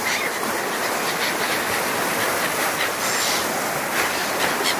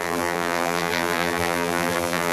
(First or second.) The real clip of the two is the first